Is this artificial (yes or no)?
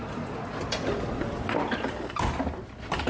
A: no